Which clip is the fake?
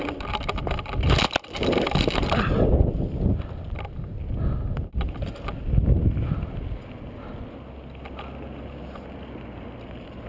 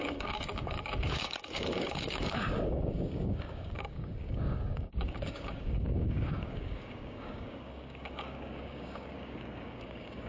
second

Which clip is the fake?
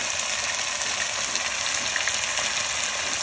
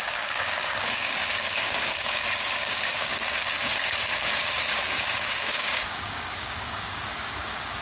second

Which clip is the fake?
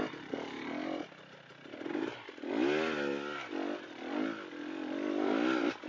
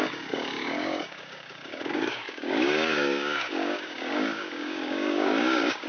second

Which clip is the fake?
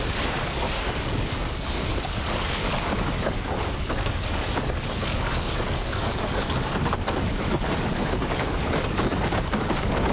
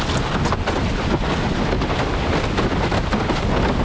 first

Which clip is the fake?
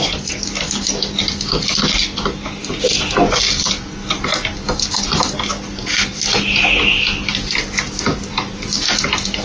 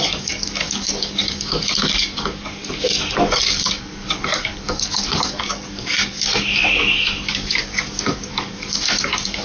second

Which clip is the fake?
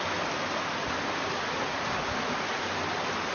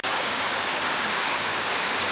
second